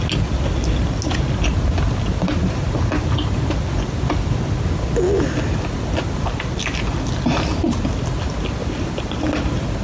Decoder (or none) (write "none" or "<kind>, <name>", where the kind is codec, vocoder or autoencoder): none